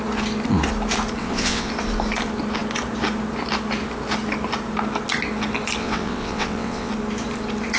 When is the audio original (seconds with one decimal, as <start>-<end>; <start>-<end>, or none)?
0.0-1.2; 1.7-5.8; 6.9-7.8

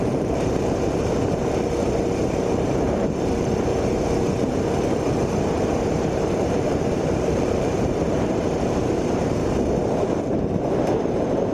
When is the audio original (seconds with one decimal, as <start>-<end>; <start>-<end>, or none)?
1.4-2.5; 3.7-5.5; 9.4-10.2